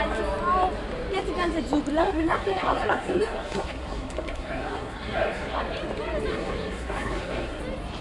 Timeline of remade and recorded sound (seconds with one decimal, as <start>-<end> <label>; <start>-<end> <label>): 0.0-2.0 recorded; 2.0-5.6 remade; 5.6-6.3 recorded; 6.3-7.6 remade; 7.6-8.0 recorded